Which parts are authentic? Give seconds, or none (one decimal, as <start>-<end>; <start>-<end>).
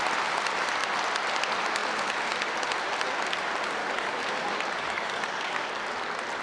0.0-3.8; 5.7-6.4